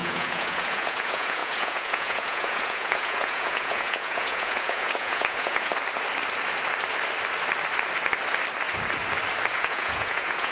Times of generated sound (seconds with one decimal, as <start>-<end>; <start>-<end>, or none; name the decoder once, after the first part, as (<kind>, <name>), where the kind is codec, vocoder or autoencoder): 0.0-5.7 (vocoder, Vocos); 9.5-10.5